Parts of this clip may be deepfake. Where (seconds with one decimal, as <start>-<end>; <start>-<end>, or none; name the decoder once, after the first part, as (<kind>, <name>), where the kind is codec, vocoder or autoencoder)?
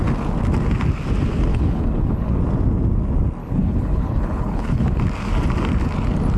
1.5-2.4 (codec, HILCodec); 3.4-5.0